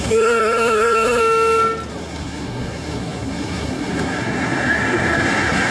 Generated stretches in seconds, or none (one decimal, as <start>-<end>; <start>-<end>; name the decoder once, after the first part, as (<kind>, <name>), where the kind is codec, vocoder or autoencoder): 0.0-1.2 (codec, SNAC); 1.9-5.7